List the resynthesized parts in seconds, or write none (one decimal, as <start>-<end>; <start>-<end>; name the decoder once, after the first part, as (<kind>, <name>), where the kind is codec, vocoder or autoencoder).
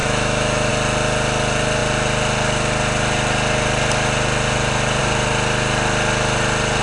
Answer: 0.0-0.7 (autoencoder, DAC-VAE)